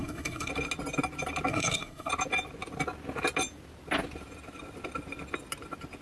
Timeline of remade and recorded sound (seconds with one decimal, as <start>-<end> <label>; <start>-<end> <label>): 0.0-0.5 remade; 0.5-1.5 recorded; 1.5-2.1 remade; 2.1-6.0 recorded